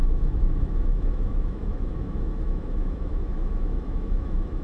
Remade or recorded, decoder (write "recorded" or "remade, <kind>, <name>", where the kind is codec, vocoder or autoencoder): remade, autoencoder, DAC-VAE